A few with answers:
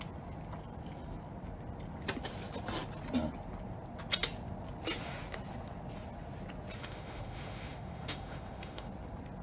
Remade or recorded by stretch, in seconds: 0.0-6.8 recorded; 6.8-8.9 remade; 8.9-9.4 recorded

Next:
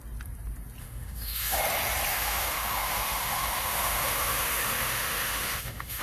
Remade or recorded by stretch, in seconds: 0.0-0.8 recorded; 0.8-1.6 remade; 1.6-2.1 recorded; 2.1-6.0 remade

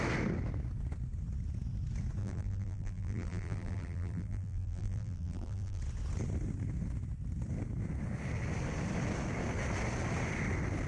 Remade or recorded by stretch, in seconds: 0.0-2.2 recorded; 2.2-5.8 remade; 5.8-10.9 recorded

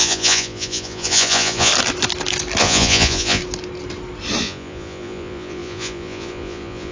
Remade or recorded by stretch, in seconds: 0.0-1.7 remade; 1.7-2.6 recorded; 2.6-3.4 remade; 3.4-4.4 recorded; 4.4-6.9 remade

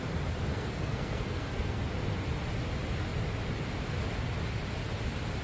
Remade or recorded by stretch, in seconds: 0.0-0.5 recorded; 0.5-1.8 remade; 1.8-5.4 recorded

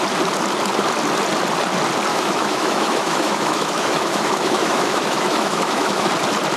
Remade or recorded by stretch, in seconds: 0.0-2.1 recorded; 2.1-6.1 remade; 6.1-6.6 recorded

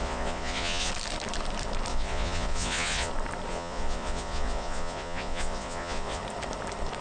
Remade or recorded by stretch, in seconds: 0.0-0.9 remade; 0.9-1.9 recorded; 1.9-3.1 remade; 3.1-3.5 recorded; 3.5-6.2 remade; 6.2-7.0 recorded

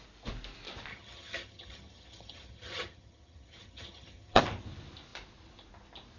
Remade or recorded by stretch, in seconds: 0.0-0.9 recorded; 0.9-4.4 remade; 4.4-6.2 recorded